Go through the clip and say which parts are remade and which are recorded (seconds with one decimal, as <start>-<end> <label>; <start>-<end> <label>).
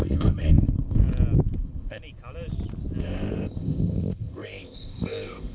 0.0-1.0 remade; 1.0-1.6 recorded; 1.6-2.0 remade; 2.0-3.0 recorded; 3.0-5.5 remade